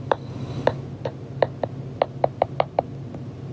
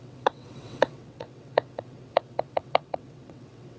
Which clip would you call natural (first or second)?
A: first